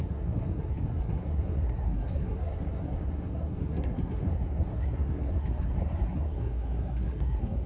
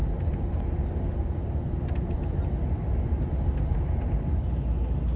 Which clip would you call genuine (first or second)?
second